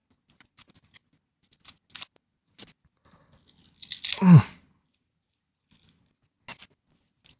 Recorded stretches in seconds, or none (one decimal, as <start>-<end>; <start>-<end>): 0.0-7.4

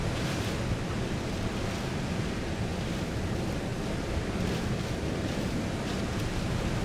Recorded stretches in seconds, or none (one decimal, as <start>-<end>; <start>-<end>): 0.0-6.8

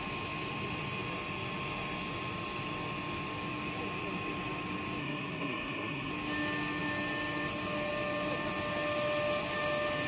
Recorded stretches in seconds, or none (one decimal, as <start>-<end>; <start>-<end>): 0.0-5.0; 6.1-10.1

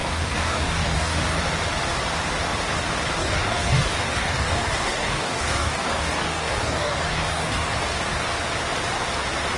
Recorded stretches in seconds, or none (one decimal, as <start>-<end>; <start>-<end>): 1.4-3.2; 7.7-9.6

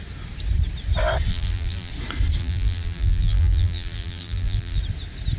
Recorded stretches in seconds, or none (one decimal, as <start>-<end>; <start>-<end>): 0.0-1.3; 1.9-2.4; 4.8-5.4